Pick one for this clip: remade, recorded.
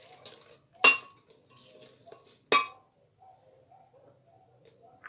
recorded